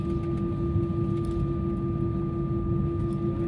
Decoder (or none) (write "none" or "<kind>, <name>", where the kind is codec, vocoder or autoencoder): none